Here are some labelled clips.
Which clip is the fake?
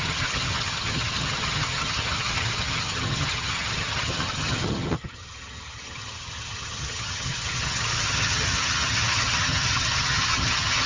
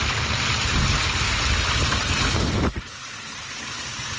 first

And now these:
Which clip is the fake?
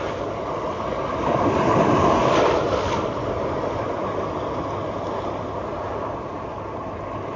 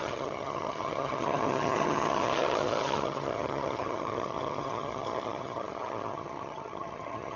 second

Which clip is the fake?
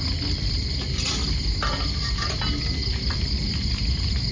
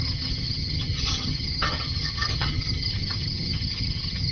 second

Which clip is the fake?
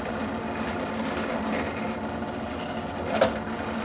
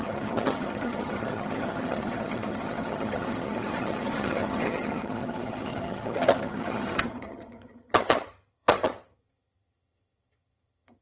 second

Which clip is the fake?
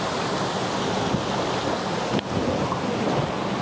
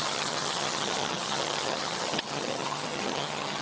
second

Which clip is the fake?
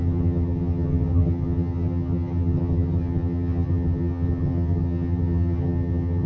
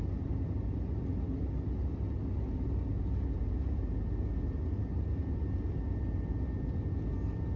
first